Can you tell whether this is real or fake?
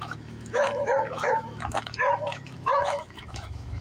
fake